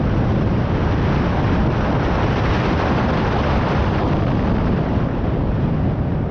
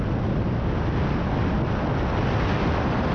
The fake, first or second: first